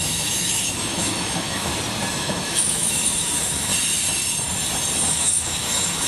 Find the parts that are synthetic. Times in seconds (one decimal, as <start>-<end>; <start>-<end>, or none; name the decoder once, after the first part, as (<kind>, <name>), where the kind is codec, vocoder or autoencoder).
0.0-1.7 (autoencoder, DAC-VAE); 2.2-3.7; 5.1-6.1